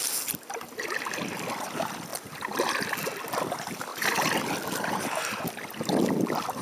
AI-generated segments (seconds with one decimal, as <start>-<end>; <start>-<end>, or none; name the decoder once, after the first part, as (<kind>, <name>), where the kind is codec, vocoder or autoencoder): none